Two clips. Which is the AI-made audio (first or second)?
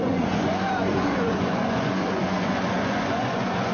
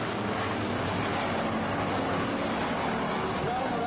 first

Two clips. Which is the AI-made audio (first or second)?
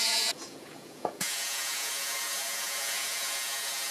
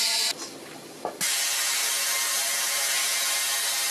first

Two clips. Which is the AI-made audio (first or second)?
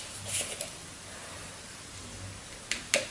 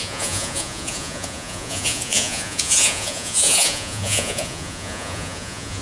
second